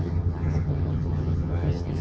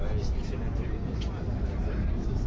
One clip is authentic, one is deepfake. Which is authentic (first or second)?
second